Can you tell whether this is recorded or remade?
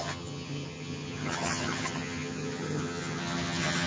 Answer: remade